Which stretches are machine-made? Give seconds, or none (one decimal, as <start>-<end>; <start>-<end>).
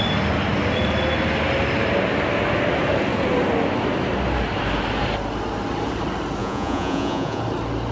6.4-7.4